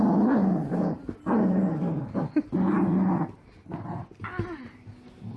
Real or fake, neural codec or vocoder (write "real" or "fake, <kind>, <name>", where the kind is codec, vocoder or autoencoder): real